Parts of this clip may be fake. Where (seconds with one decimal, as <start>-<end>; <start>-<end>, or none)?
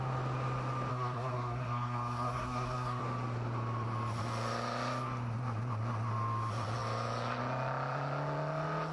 0.9-3.0